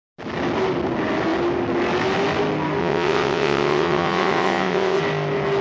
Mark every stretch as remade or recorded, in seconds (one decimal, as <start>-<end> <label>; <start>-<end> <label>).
0.0-2.8 recorded; 2.8-5.0 remade; 5.0-5.6 recorded